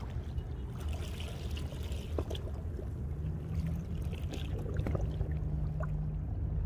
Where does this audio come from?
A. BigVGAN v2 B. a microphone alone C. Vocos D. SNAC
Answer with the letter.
B